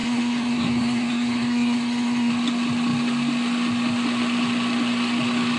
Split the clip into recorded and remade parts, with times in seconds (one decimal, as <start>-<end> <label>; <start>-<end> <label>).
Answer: 0.0-2.3 remade; 2.3-5.6 recorded